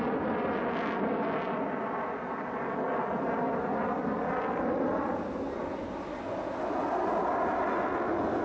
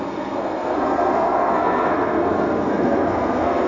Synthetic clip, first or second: second